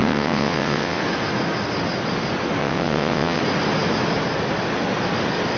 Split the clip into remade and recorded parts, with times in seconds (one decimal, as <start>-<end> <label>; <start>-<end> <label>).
0.0-1.0 remade; 1.0-2.6 recorded; 2.6-3.4 remade; 3.4-5.6 recorded